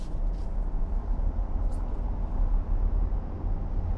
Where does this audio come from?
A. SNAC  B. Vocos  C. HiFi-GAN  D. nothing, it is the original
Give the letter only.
D